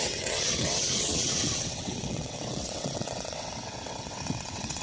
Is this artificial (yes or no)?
yes